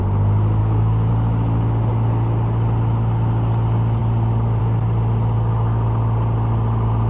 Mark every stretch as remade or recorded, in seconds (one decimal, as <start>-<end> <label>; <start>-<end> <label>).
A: 0.0-0.6 recorded; 0.6-1.1 remade; 1.1-7.1 recorded